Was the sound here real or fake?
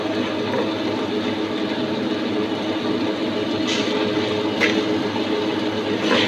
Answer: real